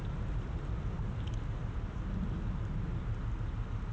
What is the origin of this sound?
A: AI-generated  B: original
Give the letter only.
B